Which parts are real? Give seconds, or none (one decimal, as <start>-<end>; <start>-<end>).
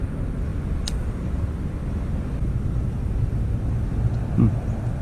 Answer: 0.0-5.0